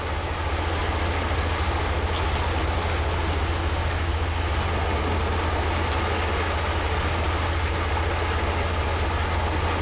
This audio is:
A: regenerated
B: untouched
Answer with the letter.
B